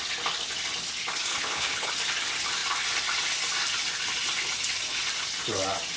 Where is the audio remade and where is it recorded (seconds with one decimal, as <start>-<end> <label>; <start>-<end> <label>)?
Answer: 0.0-1.3 recorded; 1.3-1.9 remade; 1.9-6.0 recorded